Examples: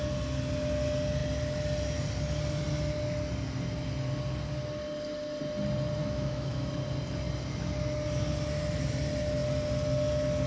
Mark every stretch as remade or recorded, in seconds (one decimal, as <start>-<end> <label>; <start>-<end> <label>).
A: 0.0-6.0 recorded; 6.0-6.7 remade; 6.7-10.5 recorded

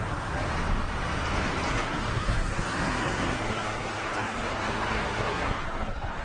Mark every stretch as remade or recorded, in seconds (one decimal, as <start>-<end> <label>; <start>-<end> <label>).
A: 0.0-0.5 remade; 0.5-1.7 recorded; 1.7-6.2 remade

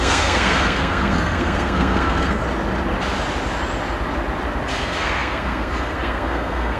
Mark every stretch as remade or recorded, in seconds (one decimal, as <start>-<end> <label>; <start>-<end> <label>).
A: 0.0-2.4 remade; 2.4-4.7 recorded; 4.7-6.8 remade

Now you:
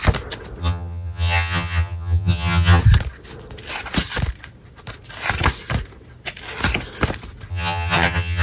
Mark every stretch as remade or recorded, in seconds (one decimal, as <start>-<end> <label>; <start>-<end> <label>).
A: 0.0-0.6 recorded; 0.6-2.8 remade; 2.8-7.5 recorded; 7.5-8.4 remade

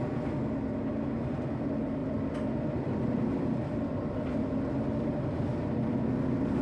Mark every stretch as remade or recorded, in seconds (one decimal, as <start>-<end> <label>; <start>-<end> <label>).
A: 0.0-2.0 recorded; 2.0-4.7 remade; 4.7-6.6 recorded

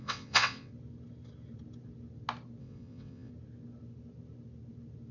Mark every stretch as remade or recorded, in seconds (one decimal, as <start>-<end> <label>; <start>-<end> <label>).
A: 0.0-0.7 remade; 0.7-2.6 recorded; 2.6-3.3 remade; 3.3-5.1 recorded

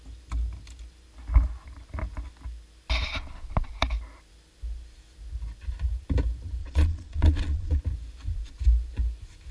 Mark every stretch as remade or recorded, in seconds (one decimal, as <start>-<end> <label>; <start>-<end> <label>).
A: 0.0-6.6 recorded; 6.6-7.8 remade; 7.8-9.5 recorded